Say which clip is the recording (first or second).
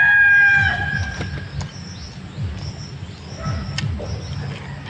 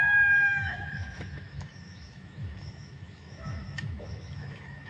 first